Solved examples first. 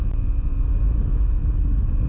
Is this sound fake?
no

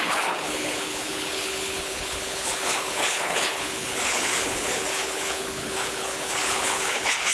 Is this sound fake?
yes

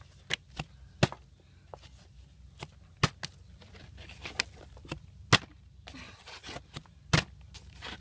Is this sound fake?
no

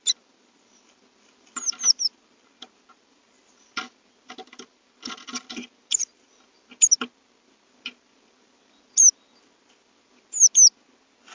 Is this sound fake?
no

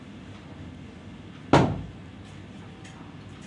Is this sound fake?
no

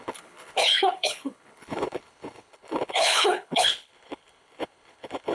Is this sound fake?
yes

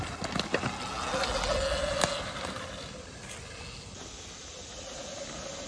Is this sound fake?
no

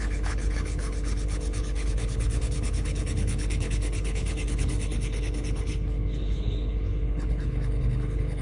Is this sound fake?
yes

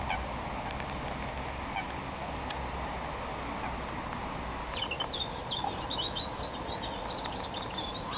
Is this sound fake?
no